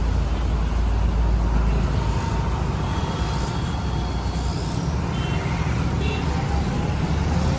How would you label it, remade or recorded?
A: recorded